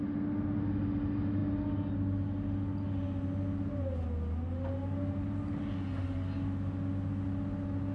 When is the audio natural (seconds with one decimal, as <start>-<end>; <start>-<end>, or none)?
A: 0.0-7.9